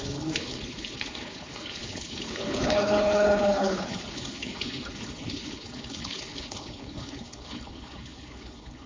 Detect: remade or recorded remade